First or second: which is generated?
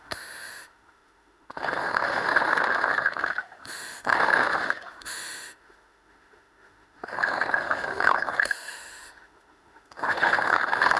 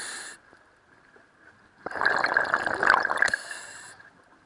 first